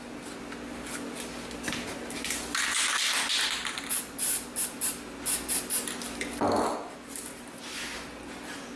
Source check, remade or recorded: recorded